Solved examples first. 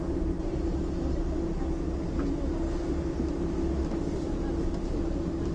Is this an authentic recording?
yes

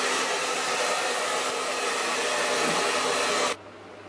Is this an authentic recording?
yes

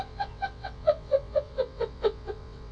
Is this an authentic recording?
no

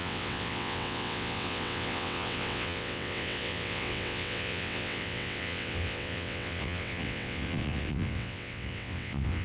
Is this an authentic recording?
no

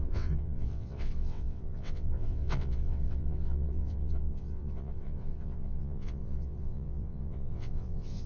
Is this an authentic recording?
no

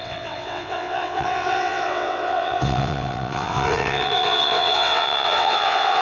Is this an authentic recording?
no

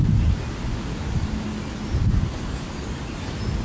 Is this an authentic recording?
yes